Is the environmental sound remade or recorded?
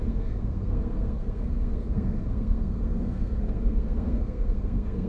remade